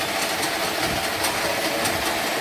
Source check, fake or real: real